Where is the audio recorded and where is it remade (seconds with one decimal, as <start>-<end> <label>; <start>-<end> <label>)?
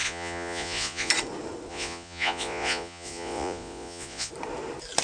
0.0-1.1 remade; 1.1-1.7 recorded; 1.7-4.3 remade; 4.3-5.0 recorded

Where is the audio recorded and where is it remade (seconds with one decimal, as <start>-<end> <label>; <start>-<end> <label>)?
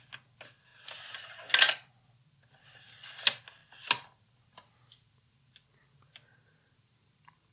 0.0-0.7 remade; 0.7-1.7 recorded; 1.7-7.5 remade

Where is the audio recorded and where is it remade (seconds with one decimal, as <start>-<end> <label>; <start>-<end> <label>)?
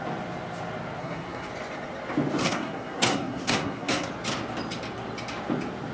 0.0-1.0 recorded; 1.0-1.5 remade; 1.5-2.4 recorded; 2.4-4.1 remade; 4.1-5.9 recorded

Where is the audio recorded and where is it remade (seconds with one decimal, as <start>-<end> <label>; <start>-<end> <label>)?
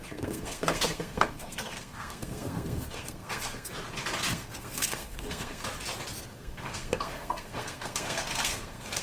0.0-3.7 remade; 3.7-4.3 recorded; 4.3-5.6 remade; 5.6-6.2 recorded; 6.2-9.0 remade